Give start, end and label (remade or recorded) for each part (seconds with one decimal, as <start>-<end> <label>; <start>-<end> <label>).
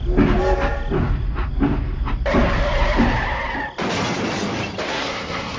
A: 0.0-4.9 recorded; 4.9-5.6 remade